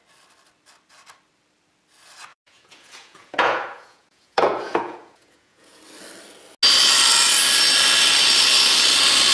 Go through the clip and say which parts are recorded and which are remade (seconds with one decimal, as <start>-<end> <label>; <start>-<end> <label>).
0.0-2.3 recorded; 2.3-5.8 remade; 5.8-9.3 recorded